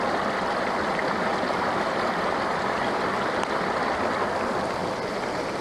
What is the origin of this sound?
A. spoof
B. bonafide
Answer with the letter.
B